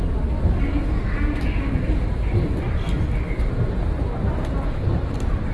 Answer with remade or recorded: recorded